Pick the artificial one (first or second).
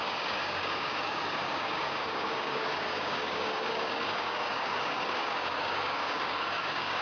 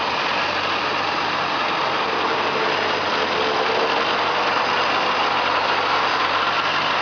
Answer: first